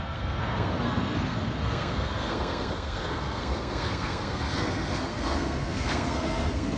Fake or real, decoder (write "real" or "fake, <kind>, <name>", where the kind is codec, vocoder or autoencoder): fake, codec, SNAC